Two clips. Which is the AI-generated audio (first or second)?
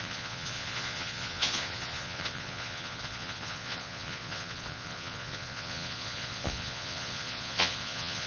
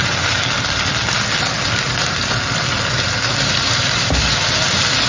first